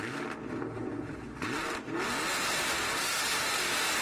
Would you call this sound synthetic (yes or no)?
no